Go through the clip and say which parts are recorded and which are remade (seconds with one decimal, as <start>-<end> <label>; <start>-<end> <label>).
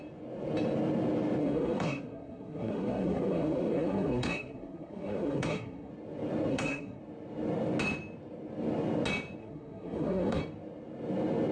0.0-1.4 recorded; 1.4-5.9 remade; 5.9-6.5 recorded; 6.5-7.0 remade; 7.0-9.4 recorded; 9.4-10.4 remade; 10.4-11.5 recorded